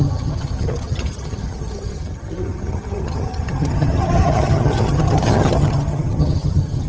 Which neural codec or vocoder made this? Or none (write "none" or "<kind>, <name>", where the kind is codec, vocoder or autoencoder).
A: vocoder, HiFi-GAN